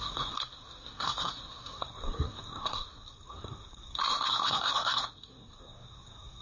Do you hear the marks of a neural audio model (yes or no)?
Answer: yes